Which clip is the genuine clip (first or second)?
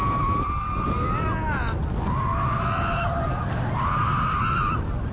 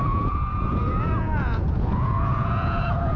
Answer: first